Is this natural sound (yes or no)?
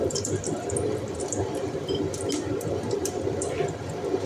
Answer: no